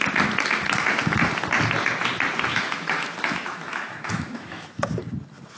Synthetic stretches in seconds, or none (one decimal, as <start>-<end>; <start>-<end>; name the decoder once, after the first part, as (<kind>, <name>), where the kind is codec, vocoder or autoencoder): 2.5-4.8 (autoencoder, DAC-VAE)